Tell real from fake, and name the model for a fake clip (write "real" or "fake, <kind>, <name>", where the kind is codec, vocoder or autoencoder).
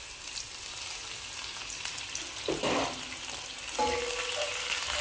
real